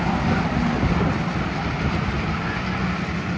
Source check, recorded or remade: recorded